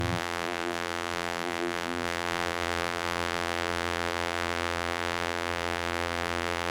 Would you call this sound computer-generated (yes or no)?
yes